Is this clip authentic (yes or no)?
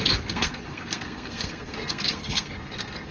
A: no